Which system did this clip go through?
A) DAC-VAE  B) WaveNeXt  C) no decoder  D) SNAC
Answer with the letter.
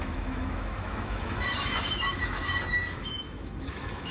A